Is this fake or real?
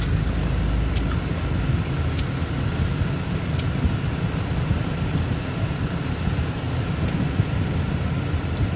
real